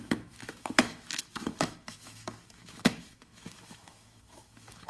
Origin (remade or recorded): remade